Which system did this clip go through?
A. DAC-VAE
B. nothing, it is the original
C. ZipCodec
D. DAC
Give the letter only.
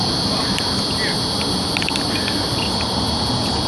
B